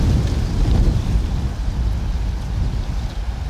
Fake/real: real